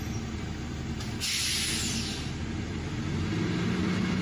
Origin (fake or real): real